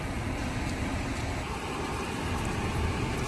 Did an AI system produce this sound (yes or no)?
no